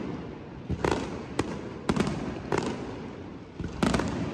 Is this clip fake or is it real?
real